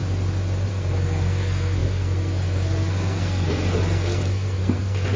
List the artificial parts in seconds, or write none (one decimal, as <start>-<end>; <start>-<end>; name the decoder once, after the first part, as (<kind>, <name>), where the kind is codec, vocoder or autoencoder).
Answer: 0.7-5.2 (codec, SNAC)